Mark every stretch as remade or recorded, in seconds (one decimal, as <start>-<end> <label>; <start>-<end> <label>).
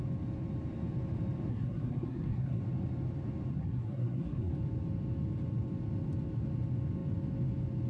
0.0-1.5 recorded; 1.5-2.6 remade; 2.6-3.5 recorded; 3.5-4.5 remade; 4.5-7.9 recorded